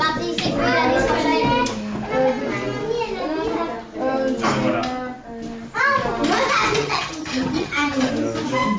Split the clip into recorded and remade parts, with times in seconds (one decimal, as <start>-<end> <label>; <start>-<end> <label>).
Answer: 0.0-6.8 recorded; 6.8-8.1 remade; 8.1-8.8 recorded